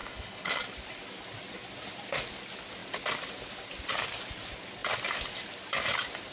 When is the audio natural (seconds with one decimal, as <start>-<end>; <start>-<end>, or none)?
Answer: 0.6-6.3